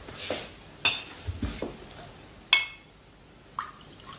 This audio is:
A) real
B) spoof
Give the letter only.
A